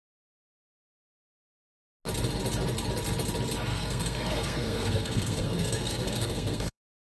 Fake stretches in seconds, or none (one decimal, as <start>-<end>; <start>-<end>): 3.7-6.8